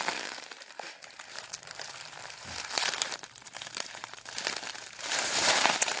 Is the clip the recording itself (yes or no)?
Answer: no